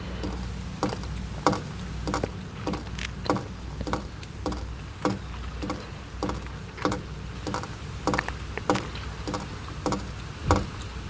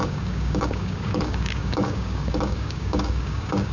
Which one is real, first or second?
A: first